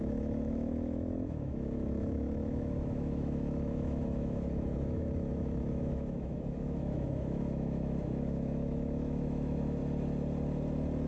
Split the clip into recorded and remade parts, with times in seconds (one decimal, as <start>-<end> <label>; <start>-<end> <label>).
0.0-9.8 remade; 9.8-11.1 recorded